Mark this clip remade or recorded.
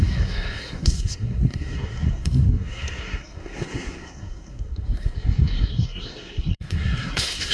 remade